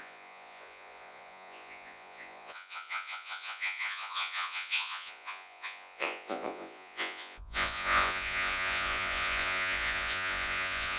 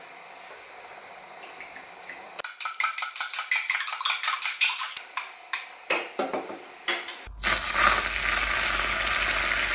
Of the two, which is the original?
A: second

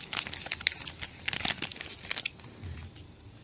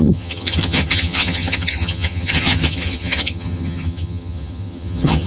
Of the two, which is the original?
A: first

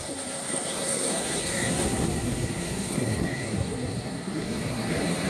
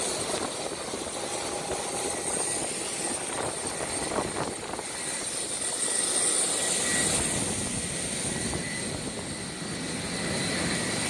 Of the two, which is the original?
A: second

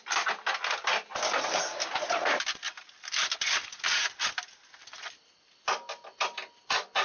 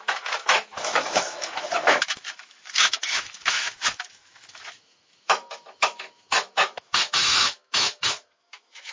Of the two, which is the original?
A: first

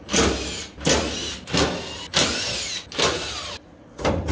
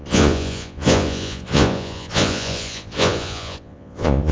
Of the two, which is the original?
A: first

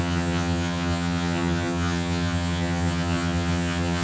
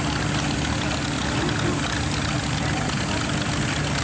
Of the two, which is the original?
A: second